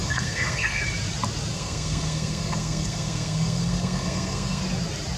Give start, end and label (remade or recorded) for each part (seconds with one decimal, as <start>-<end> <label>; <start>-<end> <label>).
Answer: 0.0-0.8 remade; 0.8-1.5 recorded; 1.5-4.6 remade; 4.6-5.2 recorded